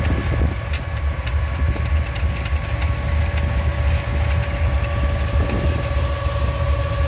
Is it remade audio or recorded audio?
recorded